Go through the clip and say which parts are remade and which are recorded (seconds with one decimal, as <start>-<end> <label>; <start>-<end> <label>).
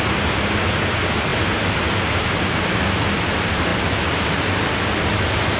0.0-5.6 recorded